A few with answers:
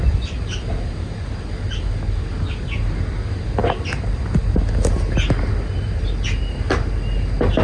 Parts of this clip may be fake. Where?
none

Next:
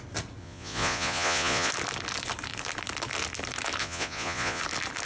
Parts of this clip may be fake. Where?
0.4-1.7; 3.8-4.6